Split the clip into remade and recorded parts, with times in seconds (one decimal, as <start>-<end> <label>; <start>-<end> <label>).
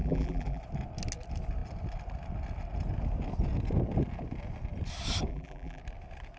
0.0-0.6 remade; 0.6-5.3 recorded; 5.3-5.8 remade; 5.8-6.4 recorded